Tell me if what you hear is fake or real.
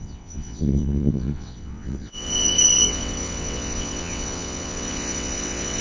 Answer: fake